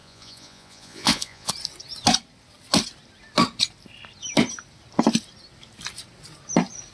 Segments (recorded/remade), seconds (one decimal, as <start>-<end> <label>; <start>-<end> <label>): 0.0-1.5 remade; 1.5-6.9 recorded